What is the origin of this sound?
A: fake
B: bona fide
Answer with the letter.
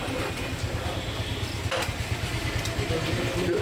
B